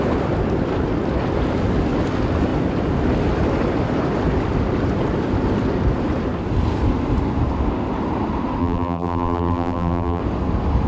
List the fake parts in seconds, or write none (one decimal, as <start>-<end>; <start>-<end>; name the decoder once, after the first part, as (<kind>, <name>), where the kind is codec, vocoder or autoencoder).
8.6-10.2 (vocoder, BigVGAN v2)